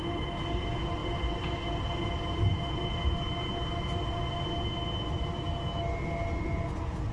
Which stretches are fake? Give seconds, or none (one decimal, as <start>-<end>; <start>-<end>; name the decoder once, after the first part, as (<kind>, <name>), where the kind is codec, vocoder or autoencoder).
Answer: none